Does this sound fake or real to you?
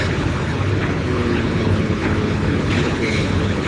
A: fake